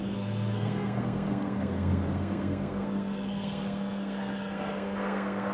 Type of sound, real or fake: fake